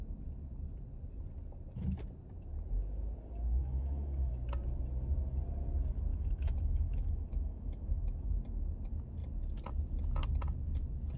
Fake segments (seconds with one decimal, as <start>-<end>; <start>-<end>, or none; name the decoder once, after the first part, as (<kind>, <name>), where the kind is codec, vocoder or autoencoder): 3.6-4.3 (autoencoder, DAC-VAE); 6.1-8.3